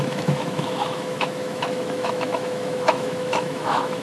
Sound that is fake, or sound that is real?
fake